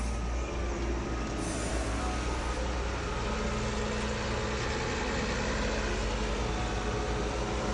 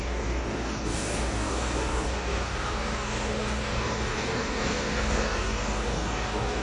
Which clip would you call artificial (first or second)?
second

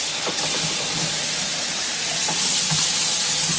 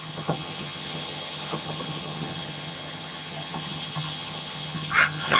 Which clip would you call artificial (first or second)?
second